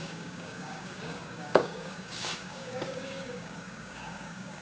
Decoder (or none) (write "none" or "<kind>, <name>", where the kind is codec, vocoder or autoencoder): codec, DAC